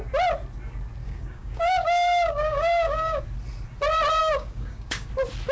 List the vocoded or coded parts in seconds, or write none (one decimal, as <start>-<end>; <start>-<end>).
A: 1.0-3.2; 4.2-5.1